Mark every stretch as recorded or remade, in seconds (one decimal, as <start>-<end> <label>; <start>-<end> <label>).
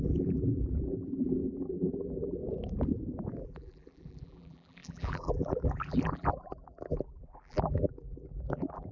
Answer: 0.0-2.4 remade; 2.4-3.4 recorded; 3.4-8.9 remade